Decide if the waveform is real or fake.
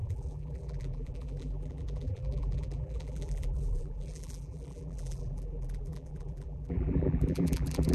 fake